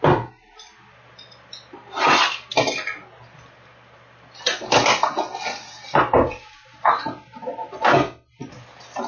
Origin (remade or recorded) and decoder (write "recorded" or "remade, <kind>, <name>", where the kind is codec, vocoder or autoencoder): recorded